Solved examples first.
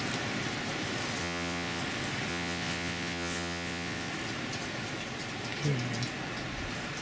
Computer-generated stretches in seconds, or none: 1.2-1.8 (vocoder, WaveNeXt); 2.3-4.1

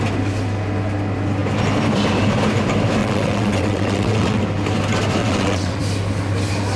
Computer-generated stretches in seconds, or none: 3.0-4.4 (vocoder, WaveNeXt); 5.2-5.8